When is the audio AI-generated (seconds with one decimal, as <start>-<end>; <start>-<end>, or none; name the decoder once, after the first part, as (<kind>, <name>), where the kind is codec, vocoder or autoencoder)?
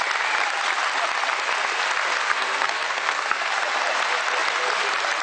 2.2-3.5 (codec, SNAC)